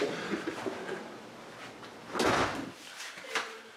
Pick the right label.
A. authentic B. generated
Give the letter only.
A